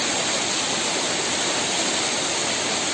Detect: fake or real real